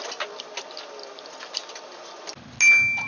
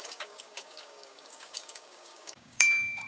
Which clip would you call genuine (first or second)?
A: first